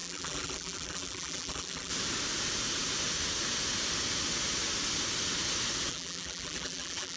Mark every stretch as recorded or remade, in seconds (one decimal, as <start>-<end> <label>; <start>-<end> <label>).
0.0-1.9 remade; 1.9-5.9 recorded; 5.9-7.2 remade